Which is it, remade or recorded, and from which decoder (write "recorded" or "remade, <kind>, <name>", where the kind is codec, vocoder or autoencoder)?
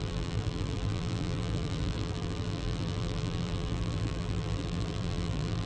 remade, vocoder, BigVGAN v2